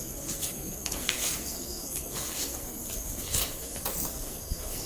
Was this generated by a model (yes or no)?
yes